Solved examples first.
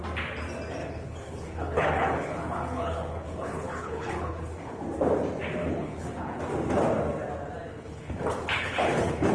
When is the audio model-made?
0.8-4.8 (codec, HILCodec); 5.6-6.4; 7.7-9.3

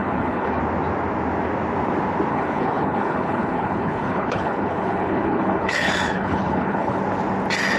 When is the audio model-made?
0.0-0.6 (codec, HILCodec); 2.3-7.0

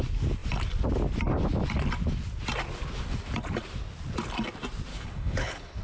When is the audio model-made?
4.9-5.8 (codec, HILCodec)

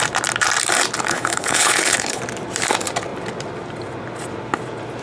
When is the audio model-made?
1.1-2.2 (codec, HILCodec)